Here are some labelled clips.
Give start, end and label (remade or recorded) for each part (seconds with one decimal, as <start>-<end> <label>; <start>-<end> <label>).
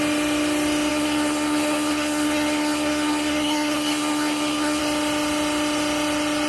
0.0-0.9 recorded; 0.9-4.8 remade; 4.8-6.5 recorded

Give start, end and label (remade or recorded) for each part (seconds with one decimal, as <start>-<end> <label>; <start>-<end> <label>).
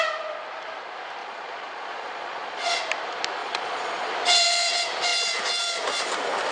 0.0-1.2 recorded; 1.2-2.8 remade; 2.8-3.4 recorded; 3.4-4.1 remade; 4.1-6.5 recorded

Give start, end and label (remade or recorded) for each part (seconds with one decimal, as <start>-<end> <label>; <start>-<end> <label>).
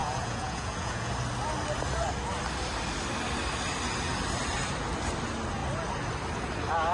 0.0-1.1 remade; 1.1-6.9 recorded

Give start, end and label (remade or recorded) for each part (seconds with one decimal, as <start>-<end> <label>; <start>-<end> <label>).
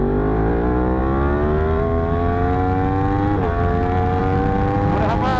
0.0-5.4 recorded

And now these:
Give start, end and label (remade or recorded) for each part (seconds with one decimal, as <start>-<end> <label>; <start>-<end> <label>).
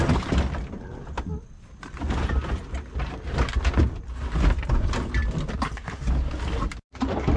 0.0-7.4 recorded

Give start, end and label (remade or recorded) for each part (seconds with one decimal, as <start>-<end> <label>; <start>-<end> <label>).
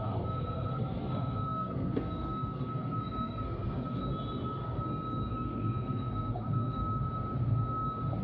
0.0-4.0 remade; 4.0-5.3 recorded; 5.3-6.8 remade; 6.8-8.2 recorded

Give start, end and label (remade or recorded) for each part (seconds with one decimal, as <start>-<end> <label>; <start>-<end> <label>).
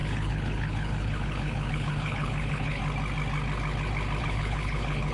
0.0-2.8 remade; 2.8-4.2 recorded; 4.2-5.1 remade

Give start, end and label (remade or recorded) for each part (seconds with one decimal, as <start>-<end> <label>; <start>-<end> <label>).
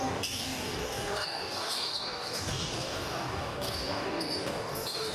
0.0-5.1 remade